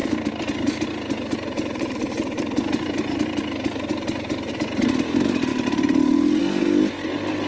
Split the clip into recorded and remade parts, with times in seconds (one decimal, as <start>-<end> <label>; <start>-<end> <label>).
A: 0.0-7.5 recorded